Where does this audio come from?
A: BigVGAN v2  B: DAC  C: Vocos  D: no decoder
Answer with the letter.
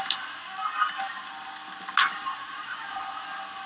D